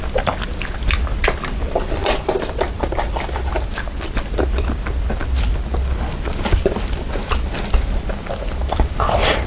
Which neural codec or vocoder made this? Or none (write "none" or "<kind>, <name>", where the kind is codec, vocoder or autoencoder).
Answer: none